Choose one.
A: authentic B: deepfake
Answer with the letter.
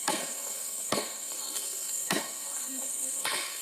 B